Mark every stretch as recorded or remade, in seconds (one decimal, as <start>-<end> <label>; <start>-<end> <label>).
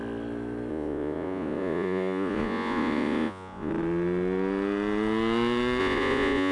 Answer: 0.0-0.7 recorded; 0.7-3.7 remade; 3.7-5.8 recorded; 5.8-6.5 remade